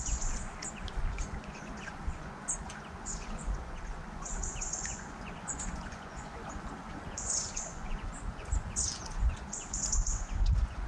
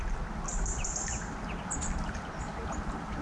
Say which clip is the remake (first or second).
first